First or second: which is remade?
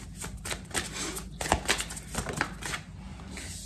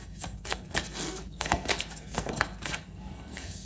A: second